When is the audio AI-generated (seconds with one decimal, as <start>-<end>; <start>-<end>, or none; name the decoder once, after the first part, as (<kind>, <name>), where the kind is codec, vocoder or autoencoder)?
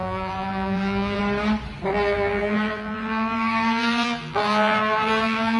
0.0-1.2 (vocoder, BigVGAN v2); 1.9-5.6